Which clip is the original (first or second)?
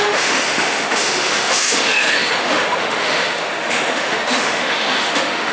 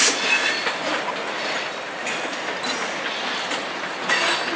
second